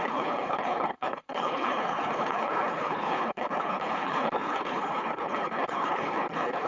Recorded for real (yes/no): no